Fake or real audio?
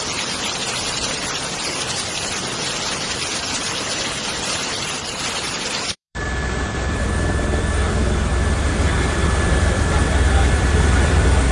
fake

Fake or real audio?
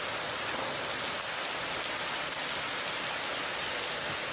real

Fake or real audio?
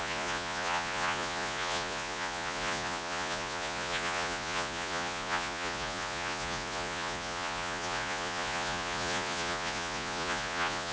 fake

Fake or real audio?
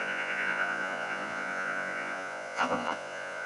fake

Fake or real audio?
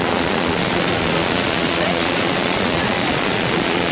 fake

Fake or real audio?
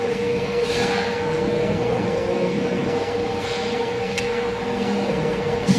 fake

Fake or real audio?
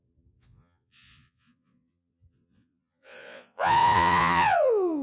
fake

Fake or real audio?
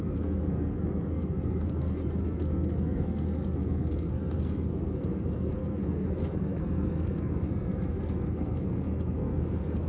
fake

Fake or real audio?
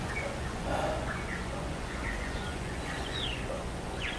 fake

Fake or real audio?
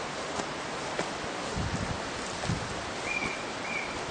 real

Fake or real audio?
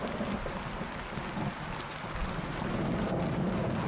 real